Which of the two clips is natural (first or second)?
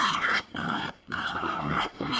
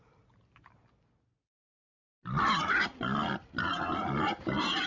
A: second